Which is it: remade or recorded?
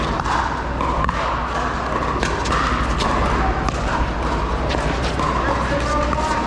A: recorded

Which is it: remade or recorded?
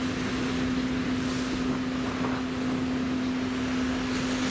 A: recorded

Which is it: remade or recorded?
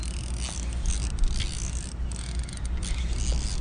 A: recorded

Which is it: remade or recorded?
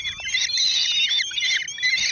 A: recorded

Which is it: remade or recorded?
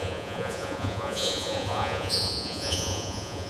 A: remade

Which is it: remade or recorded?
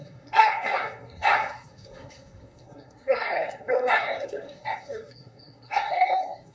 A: remade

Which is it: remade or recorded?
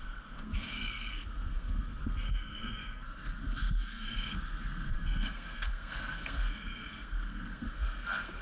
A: remade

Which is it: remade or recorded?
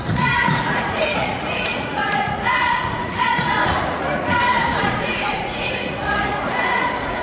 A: remade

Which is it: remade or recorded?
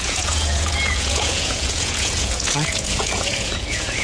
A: remade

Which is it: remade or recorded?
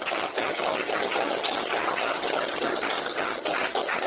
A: remade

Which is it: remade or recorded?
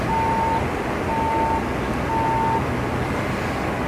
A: recorded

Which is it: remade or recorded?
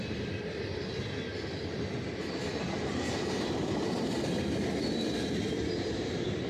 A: remade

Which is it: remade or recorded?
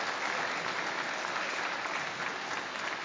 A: recorded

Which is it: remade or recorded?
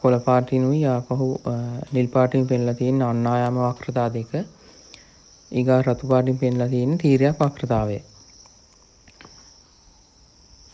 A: recorded